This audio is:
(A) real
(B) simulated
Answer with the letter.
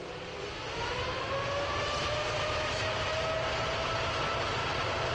A